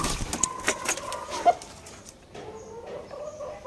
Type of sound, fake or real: real